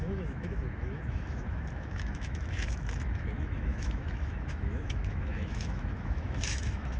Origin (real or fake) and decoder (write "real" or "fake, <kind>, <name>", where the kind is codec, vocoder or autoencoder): fake, autoencoder, DAC-VAE